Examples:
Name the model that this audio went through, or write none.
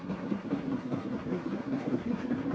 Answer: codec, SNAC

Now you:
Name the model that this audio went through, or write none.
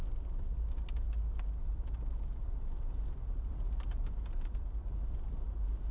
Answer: none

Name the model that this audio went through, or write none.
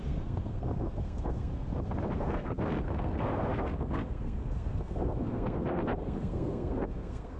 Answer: codec, SNAC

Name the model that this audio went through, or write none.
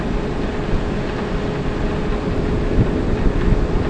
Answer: none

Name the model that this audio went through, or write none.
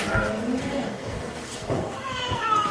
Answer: codec, SNAC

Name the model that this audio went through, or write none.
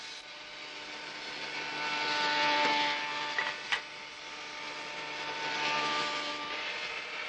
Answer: none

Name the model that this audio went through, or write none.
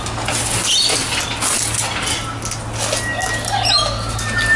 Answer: none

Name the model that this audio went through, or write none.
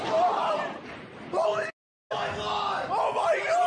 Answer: none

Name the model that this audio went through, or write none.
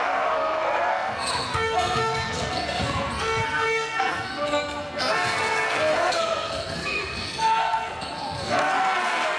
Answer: codec, SNAC